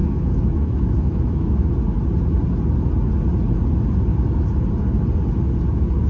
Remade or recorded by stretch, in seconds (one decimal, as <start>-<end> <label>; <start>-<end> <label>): 0.0-1.7 remade; 1.7-6.1 recorded